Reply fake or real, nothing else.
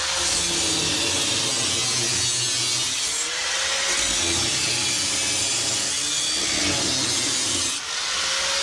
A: real